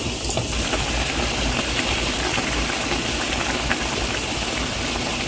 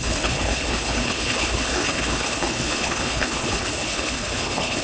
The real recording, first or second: first